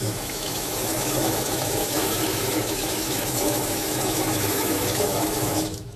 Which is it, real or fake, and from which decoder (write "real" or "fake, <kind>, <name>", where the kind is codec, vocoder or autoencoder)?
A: fake, autoencoder, DAC-VAE